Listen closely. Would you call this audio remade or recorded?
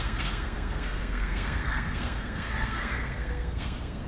remade